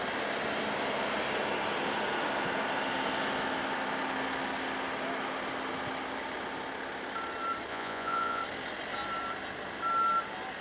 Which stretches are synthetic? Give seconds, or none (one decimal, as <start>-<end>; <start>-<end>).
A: 7.7-8.4